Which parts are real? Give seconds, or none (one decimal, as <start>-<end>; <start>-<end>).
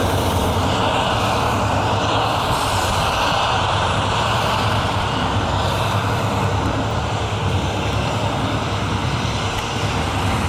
none